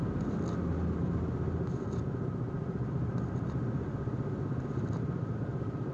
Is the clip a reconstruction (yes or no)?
no